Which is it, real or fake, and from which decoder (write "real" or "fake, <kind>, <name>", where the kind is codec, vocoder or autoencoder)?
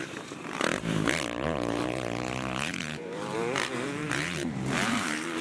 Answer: fake, vocoder, BigVGAN v2